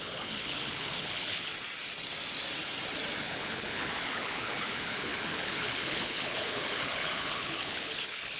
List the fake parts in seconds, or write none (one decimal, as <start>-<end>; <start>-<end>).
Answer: 0.0-1.5; 3.2-8.4